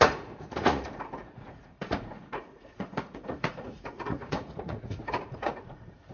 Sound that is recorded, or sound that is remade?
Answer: remade